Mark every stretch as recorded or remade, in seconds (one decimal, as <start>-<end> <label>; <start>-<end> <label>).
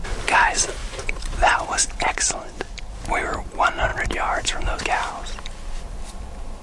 0.0-0.8 recorded; 0.8-2.6 remade; 2.6-6.6 recorded